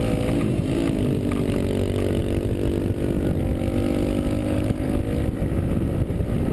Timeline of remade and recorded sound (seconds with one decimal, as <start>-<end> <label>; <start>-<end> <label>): 0.0-4.4 recorded; 4.4-5.0 remade; 5.0-6.5 recorded